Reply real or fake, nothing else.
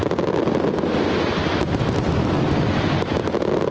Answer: real